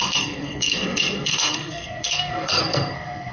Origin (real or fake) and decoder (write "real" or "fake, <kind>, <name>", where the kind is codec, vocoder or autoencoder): fake, codec, SNAC